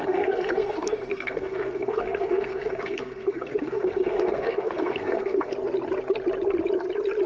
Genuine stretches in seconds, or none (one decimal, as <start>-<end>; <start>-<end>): 5.5-7.3